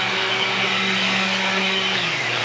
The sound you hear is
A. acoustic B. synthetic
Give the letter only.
B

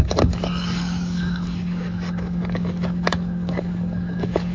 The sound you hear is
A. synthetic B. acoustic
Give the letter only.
A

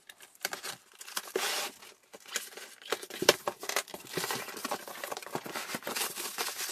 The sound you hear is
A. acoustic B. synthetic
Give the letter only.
A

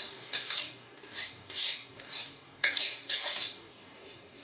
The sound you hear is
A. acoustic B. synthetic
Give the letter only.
B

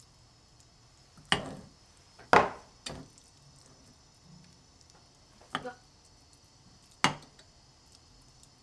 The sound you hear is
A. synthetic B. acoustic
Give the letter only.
B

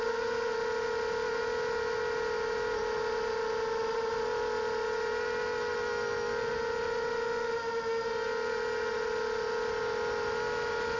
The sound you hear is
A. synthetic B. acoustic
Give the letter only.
B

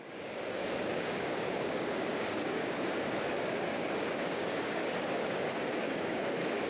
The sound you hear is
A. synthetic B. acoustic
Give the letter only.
A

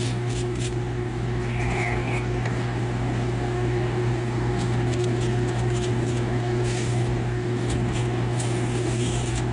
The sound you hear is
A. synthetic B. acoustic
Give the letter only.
A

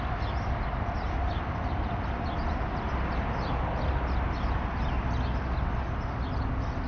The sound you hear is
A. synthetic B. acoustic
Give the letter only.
B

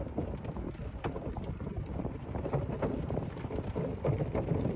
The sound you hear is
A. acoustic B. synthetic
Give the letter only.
A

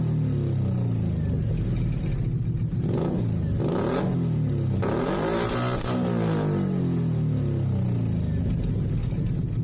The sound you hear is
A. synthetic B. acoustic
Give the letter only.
B